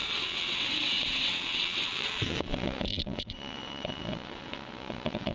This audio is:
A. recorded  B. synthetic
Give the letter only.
B